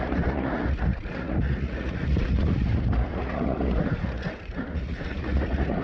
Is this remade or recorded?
remade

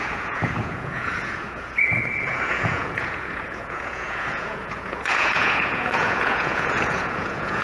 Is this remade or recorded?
remade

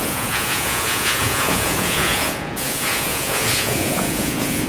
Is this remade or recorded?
remade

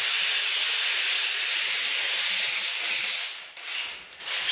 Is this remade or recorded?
recorded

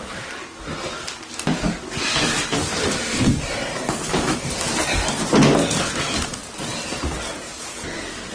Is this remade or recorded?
recorded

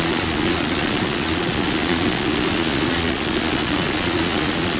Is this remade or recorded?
remade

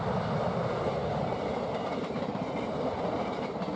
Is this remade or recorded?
recorded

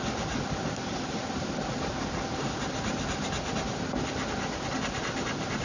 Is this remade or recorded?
recorded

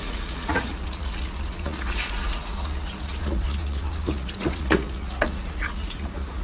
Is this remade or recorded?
remade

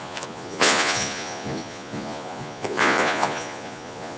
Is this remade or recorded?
remade